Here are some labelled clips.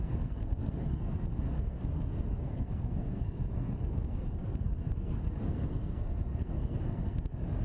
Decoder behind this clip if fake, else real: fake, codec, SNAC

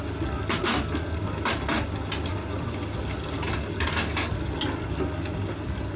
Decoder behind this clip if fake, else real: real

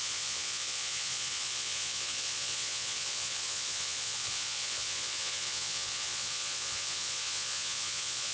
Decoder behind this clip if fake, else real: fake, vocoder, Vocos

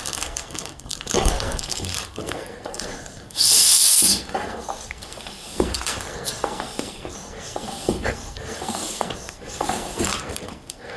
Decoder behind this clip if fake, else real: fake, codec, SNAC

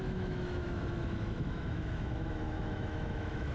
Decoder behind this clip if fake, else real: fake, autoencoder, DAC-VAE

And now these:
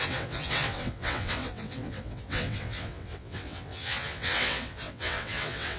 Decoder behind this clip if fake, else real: fake, vocoder, WaveNeXt